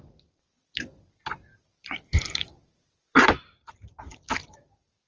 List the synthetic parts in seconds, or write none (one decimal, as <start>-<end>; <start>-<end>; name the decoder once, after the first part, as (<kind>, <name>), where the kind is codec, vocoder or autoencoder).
0.0-5.1 (vocoder, BigVGAN v2)